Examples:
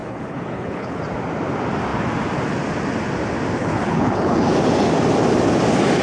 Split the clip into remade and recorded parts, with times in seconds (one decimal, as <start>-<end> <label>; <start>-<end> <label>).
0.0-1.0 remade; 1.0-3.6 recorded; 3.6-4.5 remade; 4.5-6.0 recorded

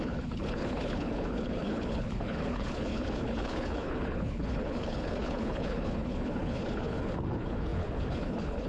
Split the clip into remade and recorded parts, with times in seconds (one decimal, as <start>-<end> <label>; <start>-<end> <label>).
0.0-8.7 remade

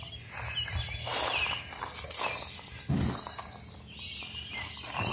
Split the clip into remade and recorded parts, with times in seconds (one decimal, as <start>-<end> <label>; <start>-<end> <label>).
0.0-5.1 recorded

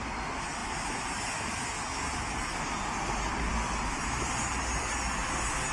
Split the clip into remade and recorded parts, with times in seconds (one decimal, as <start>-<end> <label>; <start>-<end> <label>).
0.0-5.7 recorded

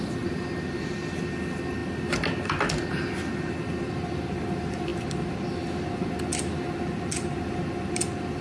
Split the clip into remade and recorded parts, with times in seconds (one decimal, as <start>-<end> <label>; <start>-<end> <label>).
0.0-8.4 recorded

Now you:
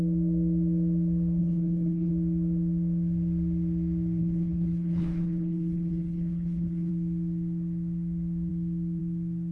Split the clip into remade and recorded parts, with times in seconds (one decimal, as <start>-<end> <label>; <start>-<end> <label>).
0.0-1.4 recorded; 1.4-2.1 remade; 2.1-4.2 recorded; 4.2-6.9 remade; 6.9-9.5 recorded